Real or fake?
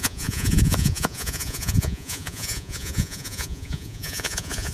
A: fake